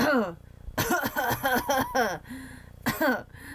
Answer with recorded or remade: recorded